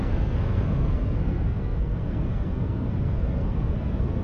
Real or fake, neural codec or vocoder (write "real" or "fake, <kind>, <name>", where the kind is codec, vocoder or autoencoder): fake, codec, SNAC